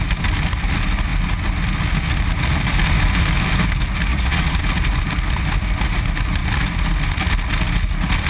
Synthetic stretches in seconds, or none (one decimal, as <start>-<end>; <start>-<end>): 4.1-4.6